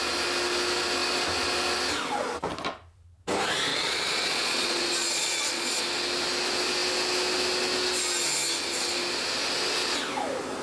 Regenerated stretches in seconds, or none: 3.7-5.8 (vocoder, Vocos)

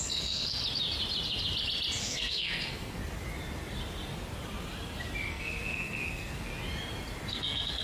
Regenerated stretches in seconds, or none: 0.0-0.6 (codec, SNAC); 2.0-3.0; 5.3-6.5; 7.3-7.8

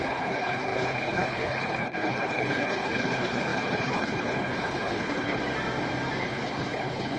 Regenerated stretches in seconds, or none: 0.0-5.4 (codec, HILCodec); 6.2-7.2

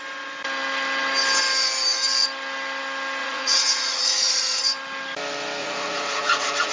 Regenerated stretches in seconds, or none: 3.2-4.6 (vocoder, Vocos); 5.6-6.7

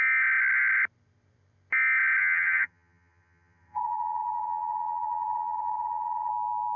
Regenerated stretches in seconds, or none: 2.2-6.3 (vocoder, HiFi-GAN)

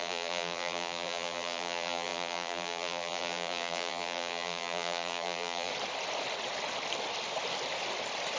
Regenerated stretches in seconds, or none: 0.0-5.7 (vocoder, BigVGAN v2)

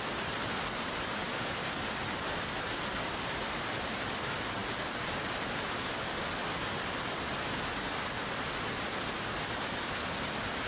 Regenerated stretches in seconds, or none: 0.0-10.7 (vocoder, BigVGAN v2)

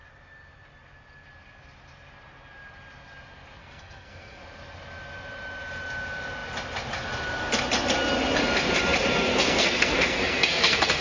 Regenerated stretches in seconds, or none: 3.6-4.4 (codec, SNAC); 9.3-11.0